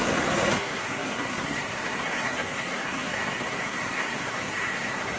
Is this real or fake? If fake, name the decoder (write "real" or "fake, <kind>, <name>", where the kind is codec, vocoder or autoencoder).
fake, codec, SNAC